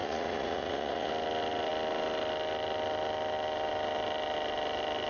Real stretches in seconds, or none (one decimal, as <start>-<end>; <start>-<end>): 1.1-5.1